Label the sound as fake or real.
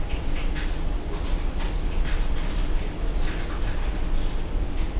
real